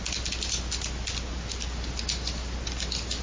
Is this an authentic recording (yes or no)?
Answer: yes